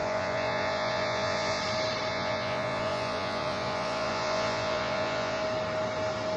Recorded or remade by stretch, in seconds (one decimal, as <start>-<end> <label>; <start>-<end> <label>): 0.0-1.6 remade; 1.6-2.1 recorded; 2.1-5.4 remade; 5.4-6.4 recorded